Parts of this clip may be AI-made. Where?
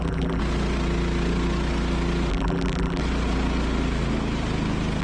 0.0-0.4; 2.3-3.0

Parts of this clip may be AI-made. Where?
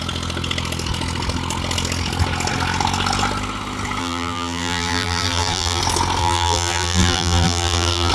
4.0-5.8; 6.2-8.1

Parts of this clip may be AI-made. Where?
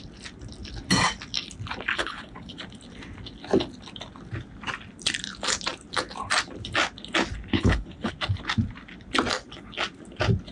1.9-2.6; 7.5-8.1